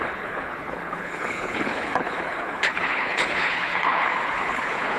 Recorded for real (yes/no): no